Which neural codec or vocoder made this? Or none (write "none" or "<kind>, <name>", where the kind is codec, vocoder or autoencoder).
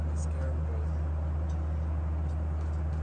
none